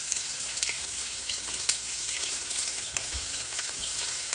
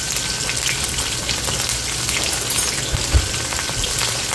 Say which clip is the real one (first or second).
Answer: second